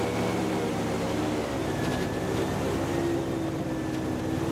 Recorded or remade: recorded